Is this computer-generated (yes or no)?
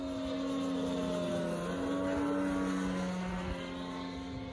no